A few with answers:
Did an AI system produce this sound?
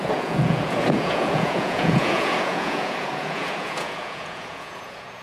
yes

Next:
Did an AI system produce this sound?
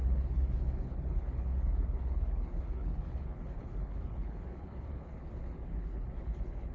yes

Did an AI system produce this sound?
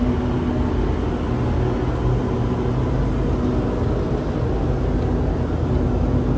no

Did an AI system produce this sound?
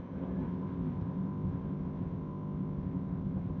yes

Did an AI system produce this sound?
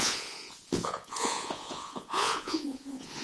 yes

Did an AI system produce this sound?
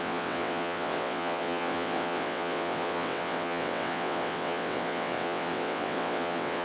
yes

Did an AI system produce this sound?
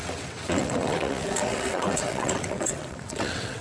yes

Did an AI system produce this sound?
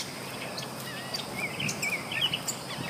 no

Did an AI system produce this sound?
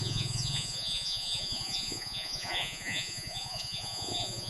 yes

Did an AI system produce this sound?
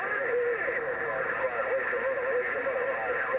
no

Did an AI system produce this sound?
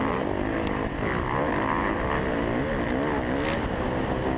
no